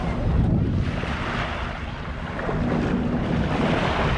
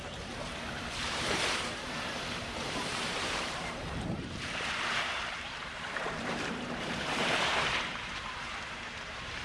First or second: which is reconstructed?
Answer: second